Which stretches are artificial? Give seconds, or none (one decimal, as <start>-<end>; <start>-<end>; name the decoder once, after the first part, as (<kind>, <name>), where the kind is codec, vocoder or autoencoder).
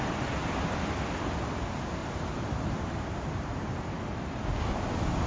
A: 2.0-3.9 (vocoder, BigVGAN v2)